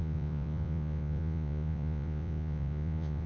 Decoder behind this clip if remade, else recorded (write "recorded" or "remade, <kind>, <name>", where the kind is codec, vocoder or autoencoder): remade, vocoder, Vocos